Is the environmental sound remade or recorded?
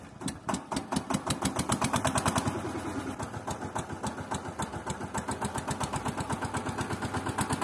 recorded